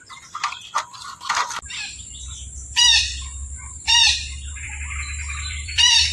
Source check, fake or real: fake